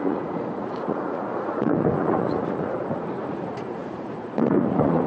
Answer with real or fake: fake